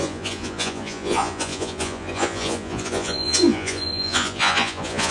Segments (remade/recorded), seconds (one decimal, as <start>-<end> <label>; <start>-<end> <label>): 0.0-5.1 remade